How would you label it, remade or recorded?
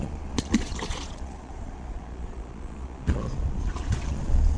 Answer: remade